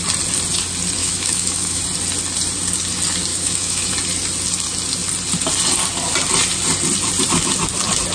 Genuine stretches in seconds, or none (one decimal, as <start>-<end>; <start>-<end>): 0.0-1.0; 1.8-3.3; 3.9-8.1